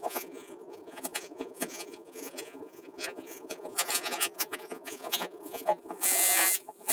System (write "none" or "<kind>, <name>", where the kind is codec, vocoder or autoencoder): vocoder, Vocos